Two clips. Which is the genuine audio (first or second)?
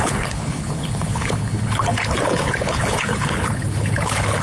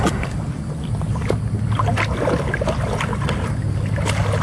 second